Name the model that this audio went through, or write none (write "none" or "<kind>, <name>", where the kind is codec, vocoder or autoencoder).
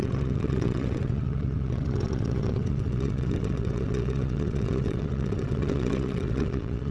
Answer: vocoder, WaveNeXt